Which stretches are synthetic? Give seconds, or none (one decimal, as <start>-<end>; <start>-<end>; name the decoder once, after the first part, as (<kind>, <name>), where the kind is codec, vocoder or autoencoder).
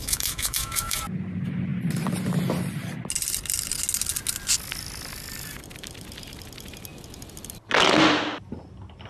0.0-1.0 (autoencoder, DAC-VAE)